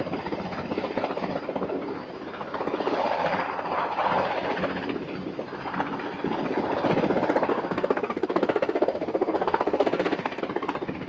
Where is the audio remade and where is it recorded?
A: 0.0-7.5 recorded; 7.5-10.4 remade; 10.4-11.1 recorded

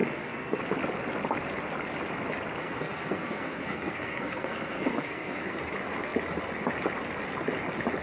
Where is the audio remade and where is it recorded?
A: 0.0-0.6 remade; 0.6-2.6 recorded; 2.6-5.6 remade; 5.6-8.0 recorded

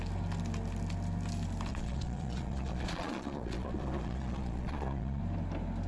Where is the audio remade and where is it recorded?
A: 0.0-1.7 recorded; 1.7-5.2 remade; 5.2-5.9 recorded

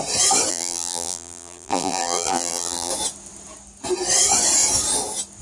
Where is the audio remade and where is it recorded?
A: 0.0-0.5 recorded; 0.5-2.9 remade; 2.9-5.4 recorded

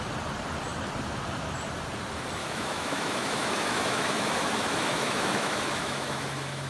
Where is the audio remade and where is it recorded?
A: 0.0-2.4 recorded; 2.4-6.7 remade